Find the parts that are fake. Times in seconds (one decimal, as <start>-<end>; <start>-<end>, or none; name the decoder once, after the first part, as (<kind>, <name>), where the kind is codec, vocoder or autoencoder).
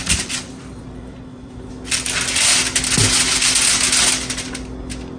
0.0-1.7 (vocoder, BigVGAN v2)